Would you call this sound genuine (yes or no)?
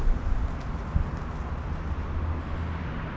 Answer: yes